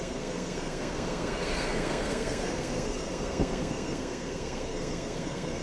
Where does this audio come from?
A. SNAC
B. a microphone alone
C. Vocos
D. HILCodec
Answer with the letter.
A